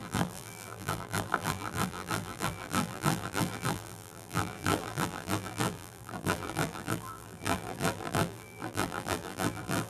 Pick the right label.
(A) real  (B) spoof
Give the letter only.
B